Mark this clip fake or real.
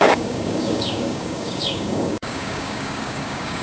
fake